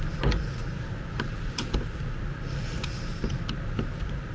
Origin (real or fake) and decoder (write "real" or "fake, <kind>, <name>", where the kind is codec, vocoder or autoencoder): real